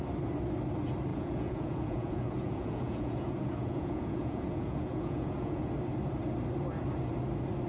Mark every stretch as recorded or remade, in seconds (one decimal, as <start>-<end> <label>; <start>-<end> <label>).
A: 0.0-1.1 recorded; 1.1-5.7 remade; 5.7-7.7 recorded